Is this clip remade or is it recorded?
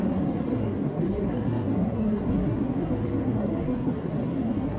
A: remade